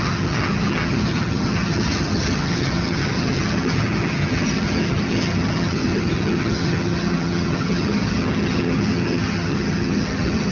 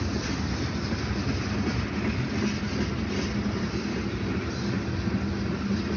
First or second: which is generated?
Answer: first